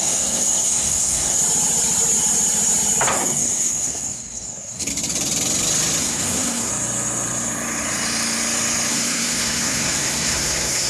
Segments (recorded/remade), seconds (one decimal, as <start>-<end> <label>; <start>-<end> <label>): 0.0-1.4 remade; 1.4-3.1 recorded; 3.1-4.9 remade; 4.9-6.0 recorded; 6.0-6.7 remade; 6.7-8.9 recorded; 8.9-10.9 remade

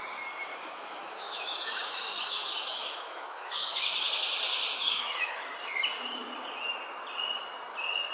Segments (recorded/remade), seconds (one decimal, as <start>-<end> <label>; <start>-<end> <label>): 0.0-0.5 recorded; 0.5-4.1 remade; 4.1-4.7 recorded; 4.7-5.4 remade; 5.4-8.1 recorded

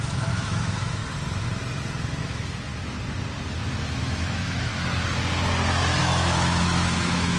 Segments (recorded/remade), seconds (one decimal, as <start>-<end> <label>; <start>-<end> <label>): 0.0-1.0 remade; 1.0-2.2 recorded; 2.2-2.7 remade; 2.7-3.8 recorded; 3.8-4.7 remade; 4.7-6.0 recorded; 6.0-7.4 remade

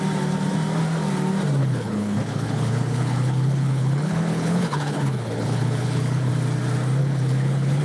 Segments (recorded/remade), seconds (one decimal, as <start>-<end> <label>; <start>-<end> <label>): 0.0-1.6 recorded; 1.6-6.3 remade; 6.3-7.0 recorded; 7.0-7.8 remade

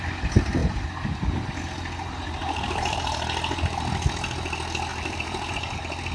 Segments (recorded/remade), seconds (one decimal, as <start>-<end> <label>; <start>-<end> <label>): 0.0-2.4 recorded; 2.4-3.0 remade; 3.0-4.9 recorded; 4.9-6.1 remade

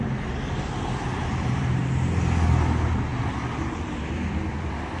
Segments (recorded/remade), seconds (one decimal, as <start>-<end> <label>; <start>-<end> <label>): 0.0-1.2 recorded; 1.2-1.8 remade; 1.8-5.0 recorded